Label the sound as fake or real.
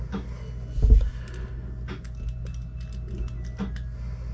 real